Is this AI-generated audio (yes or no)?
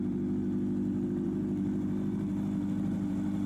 yes